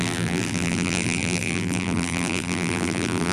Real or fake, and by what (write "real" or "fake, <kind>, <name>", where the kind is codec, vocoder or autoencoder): fake, vocoder, BigVGAN v2